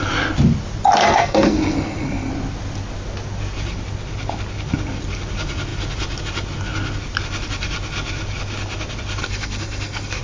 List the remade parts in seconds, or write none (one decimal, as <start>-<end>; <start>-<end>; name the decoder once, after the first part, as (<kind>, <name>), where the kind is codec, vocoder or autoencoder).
1.0-2.3 (codec, SNAC); 9.2-10.2